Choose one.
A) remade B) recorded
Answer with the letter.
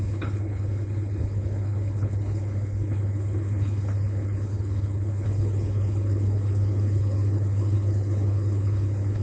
A